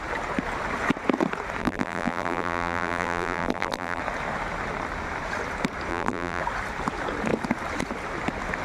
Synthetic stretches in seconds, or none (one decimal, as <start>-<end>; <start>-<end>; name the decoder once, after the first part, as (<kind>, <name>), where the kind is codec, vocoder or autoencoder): 1.6-4.0 (vocoder, BigVGAN v2); 5.9-6.4